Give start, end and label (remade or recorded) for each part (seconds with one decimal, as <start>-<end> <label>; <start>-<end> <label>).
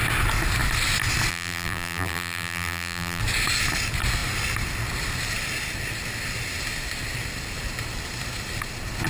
0.0-1.3 recorded; 1.3-3.2 remade; 3.2-9.1 recorded